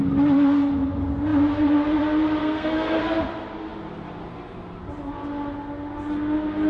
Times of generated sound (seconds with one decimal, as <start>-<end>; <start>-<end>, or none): 2.4-3.0